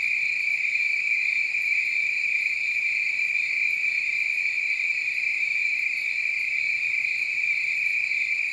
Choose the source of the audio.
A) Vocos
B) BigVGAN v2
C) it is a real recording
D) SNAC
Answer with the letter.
B